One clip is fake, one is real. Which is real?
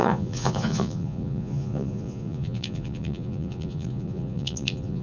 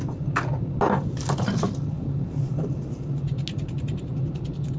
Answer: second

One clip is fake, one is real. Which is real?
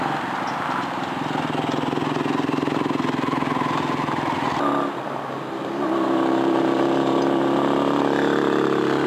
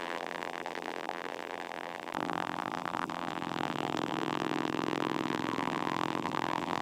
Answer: first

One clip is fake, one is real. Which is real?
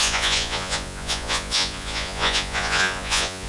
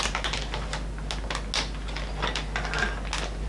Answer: second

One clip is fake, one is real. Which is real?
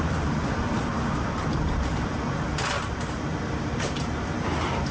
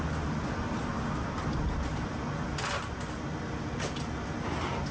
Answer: second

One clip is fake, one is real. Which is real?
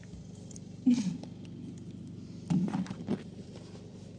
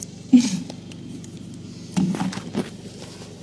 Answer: second